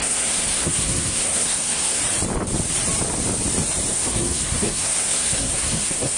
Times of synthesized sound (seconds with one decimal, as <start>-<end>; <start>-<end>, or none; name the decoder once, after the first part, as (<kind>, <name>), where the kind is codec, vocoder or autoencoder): 0.0-2.0 (codec, SNAC); 3.9-6.2